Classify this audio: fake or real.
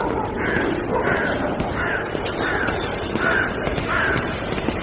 fake